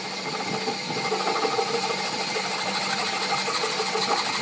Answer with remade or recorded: recorded